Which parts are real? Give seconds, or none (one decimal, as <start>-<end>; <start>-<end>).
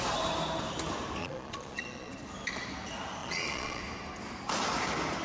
0.0-1.2; 2.1-3.2; 3.8-5.2